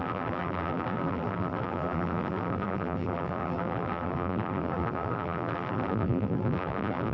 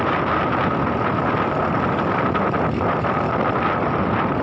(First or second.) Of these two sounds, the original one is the second